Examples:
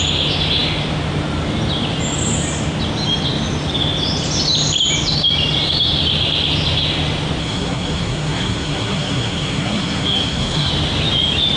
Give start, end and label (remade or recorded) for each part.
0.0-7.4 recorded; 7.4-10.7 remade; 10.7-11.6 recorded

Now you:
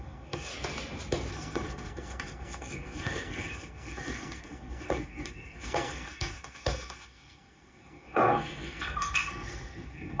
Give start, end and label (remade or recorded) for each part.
0.0-0.5 remade; 0.5-1.3 recorded; 1.3-10.2 remade

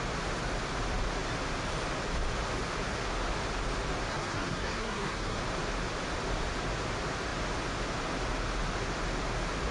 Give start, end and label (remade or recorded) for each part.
0.0-4.1 recorded; 4.1-5.4 remade; 5.4-9.7 recorded

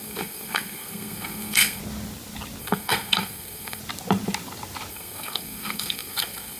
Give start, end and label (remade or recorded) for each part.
0.0-1.8 remade; 1.8-2.6 recorded; 2.6-3.8 remade; 3.8-4.9 recorded; 4.9-6.6 remade

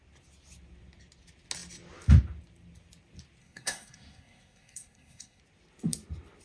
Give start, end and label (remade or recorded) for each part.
0.0-3.4 recorded; 3.4-5.4 remade; 5.4-6.4 recorded

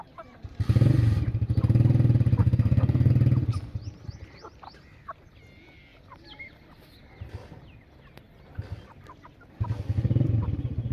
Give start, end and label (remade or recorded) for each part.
0.0-2.4 recorded; 2.4-3.1 remade; 3.1-10.9 recorded

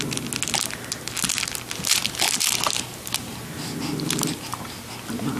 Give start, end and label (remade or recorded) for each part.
0.0-5.4 recorded